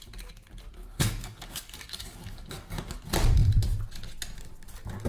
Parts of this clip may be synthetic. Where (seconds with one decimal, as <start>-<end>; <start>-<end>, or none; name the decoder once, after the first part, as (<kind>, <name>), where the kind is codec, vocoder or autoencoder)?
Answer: 0.8-3.0 (codec, DAC)